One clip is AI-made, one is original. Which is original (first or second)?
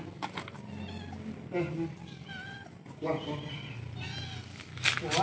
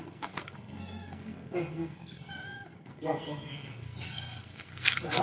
first